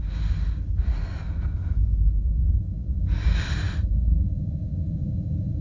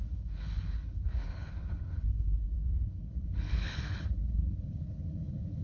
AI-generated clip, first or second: second